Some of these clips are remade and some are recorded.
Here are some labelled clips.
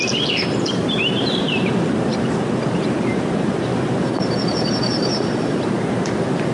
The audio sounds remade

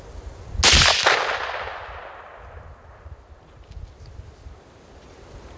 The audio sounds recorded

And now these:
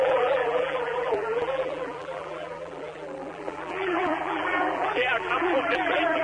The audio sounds remade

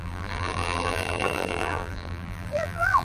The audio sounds remade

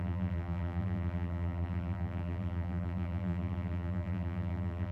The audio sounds remade